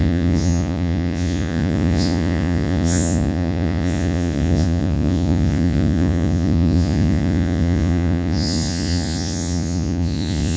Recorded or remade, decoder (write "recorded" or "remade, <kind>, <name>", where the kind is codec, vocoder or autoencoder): remade, vocoder, Vocos